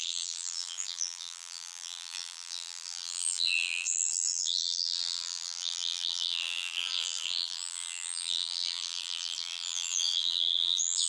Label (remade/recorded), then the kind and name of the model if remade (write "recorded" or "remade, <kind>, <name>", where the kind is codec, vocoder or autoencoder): remade, vocoder, BigVGAN v2